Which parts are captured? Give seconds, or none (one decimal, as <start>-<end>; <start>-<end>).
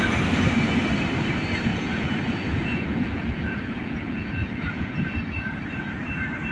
0.0-1.7; 5.6-6.5